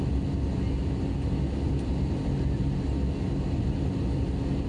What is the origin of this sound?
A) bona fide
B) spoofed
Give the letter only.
A